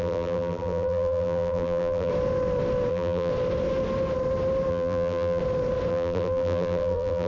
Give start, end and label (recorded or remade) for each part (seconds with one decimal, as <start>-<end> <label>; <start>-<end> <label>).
0.0-2.1 remade; 2.1-2.9 recorded; 2.9-3.3 remade; 3.3-4.7 recorded; 4.7-5.4 remade; 5.4-5.9 recorded; 5.9-7.3 remade

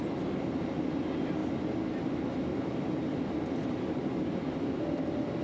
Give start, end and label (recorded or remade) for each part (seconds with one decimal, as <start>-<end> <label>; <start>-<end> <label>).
0.0-2.5 recorded; 2.5-3.3 remade; 3.3-5.4 recorded

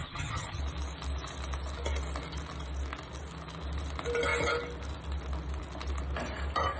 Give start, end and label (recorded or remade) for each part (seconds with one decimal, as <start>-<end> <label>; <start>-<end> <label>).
0.0-0.6 remade; 0.6-6.8 recorded

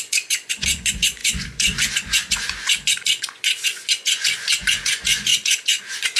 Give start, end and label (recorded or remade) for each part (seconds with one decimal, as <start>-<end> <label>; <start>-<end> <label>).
0.0-6.2 remade

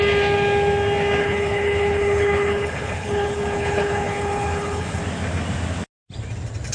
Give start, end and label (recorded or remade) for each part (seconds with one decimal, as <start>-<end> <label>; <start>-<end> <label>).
0.0-1.2 recorded; 1.2-5.0 remade; 5.0-6.7 recorded

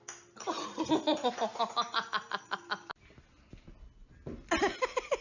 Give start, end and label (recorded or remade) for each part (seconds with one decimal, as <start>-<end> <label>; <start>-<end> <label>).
0.0-5.2 recorded

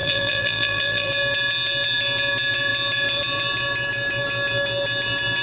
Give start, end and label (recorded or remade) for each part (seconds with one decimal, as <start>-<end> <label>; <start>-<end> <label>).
0.0-1.1 remade; 1.1-5.4 recorded